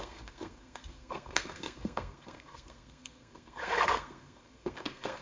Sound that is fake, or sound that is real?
fake